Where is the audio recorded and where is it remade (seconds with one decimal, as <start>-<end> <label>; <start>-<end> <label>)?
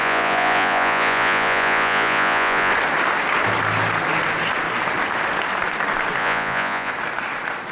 0.0-2.7 remade; 2.7-6.2 recorded; 6.2-6.9 remade; 6.9-7.7 recorded